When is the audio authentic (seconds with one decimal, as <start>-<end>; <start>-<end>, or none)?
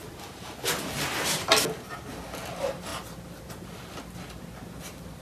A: 0.0-5.2